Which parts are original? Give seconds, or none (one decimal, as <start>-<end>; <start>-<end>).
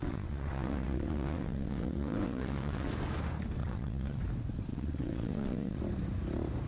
2.9-3.6; 4.2-4.7; 5.8-6.7